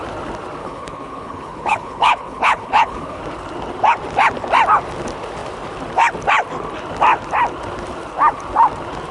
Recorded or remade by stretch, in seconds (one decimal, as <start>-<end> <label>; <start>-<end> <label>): 0.0-0.6 recorded; 0.6-3.2 remade; 3.2-9.1 recorded